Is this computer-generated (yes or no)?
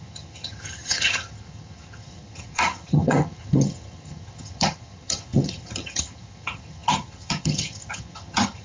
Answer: yes